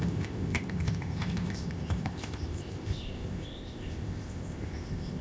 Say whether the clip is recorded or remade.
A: remade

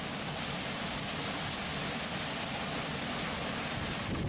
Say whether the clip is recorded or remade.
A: recorded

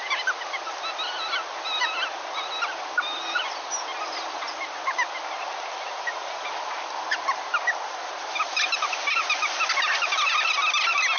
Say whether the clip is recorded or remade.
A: recorded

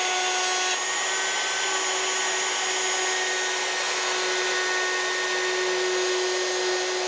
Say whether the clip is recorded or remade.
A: recorded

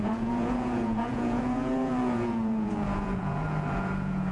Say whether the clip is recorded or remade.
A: remade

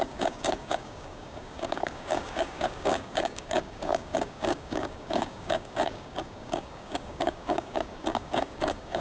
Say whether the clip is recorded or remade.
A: remade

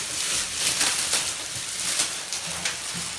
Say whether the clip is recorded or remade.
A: recorded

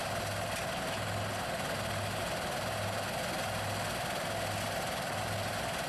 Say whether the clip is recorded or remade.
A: recorded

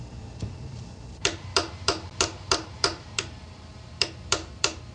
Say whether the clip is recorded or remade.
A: remade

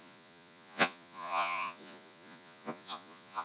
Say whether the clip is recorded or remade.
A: remade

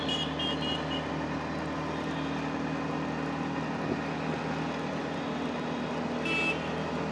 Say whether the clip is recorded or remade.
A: recorded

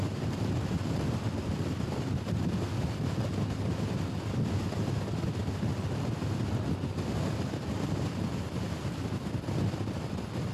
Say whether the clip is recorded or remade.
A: recorded